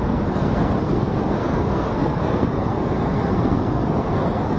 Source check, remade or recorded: remade